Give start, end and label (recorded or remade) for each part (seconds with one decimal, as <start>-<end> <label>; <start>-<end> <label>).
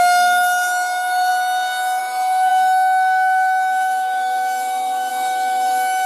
0.0-1.3 remade; 1.3-2.0 recorded; 2.0-6.1 remade